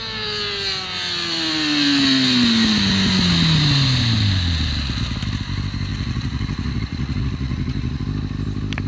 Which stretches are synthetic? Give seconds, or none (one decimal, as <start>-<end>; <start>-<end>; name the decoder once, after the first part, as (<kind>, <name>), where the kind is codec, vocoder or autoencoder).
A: 5.9-8.0 (vocoder, Vocos)